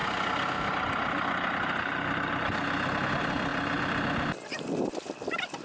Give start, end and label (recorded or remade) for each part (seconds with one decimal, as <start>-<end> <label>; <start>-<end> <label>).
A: 0.0-5.6 recorded